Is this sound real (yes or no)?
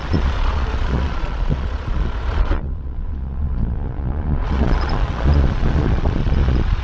no